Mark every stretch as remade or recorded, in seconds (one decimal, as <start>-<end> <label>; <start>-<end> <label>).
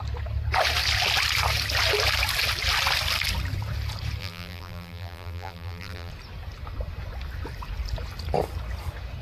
0.0-4.2 recorded; 4.2-6.1 remade; 6.1-9.2 recorded